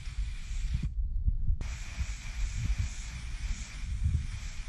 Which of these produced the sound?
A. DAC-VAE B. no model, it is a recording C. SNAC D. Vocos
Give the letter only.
D